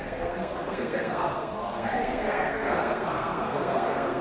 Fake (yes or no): yes